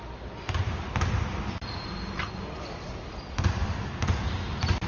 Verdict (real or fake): real